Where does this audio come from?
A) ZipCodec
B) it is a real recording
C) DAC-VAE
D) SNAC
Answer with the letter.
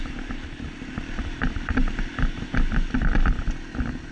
B